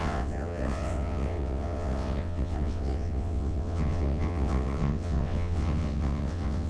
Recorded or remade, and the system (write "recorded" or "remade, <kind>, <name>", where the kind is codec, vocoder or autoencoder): remade, vocoder, WaveNeXt